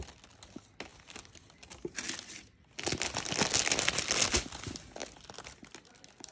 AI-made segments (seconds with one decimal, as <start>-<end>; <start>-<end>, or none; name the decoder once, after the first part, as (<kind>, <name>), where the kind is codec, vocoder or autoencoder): none